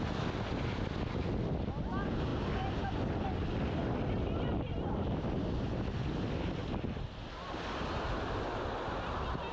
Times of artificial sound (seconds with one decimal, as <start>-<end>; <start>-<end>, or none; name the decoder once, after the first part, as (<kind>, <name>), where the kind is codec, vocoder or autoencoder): none

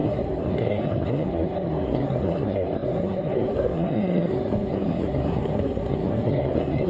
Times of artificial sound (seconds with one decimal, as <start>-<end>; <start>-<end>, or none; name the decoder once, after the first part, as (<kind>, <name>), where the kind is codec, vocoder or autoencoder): 0.0-6.9 (codec, SNAC)

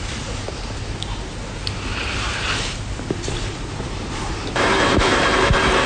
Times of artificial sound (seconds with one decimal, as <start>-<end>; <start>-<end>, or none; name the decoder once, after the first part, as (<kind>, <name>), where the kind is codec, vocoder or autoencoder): 1.9-5.4 (vocoder, BigVGAN v2)

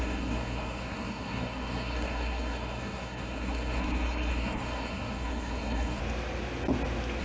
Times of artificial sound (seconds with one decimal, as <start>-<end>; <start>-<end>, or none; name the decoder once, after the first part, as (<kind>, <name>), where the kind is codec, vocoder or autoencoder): 0.0-6.0 (codec, SNAC)

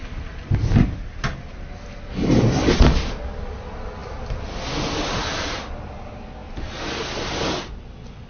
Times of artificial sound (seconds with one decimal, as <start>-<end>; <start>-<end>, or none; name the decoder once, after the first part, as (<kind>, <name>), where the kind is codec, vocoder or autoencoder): 4.0-5.6 (vocoder, BigVGAN v2)

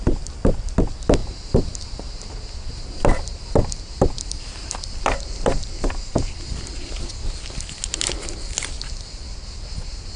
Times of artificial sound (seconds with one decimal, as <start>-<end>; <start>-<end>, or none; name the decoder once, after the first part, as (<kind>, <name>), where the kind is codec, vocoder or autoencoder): none